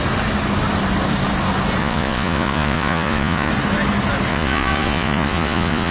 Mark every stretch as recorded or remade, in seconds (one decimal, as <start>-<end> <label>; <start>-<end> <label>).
0.0-1.8 recorded; 1.8-3.5 remade; 3.5-4.3 recorded; 4.3-5.9 remade